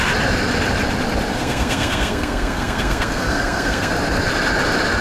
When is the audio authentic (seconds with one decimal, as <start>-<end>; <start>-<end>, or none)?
0.0-1.3; 3.9-5.0